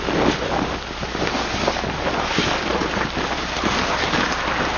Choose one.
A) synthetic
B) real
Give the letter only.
B